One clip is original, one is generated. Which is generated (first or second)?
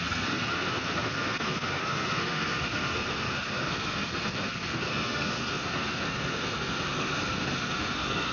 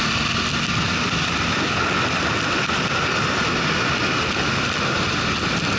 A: first